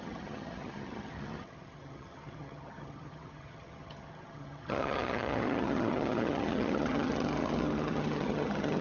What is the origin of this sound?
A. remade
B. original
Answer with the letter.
A